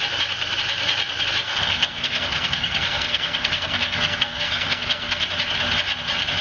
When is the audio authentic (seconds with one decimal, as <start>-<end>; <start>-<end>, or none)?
0.0-1.4; 5.2-6.4